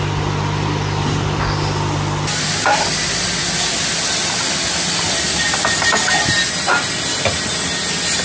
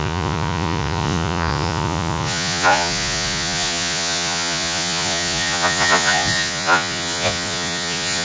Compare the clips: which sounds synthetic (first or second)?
second